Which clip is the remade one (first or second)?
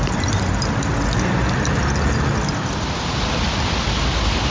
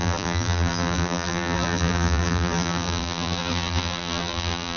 second